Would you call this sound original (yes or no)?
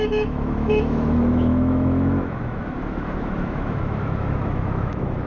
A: no